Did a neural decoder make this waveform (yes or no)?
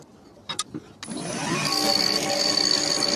no